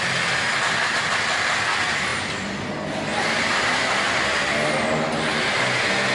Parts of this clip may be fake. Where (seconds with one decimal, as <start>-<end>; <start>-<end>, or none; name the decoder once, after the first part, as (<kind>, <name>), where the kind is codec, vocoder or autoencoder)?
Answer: 3.1-5.3 (vocoder, BigVGAN v2)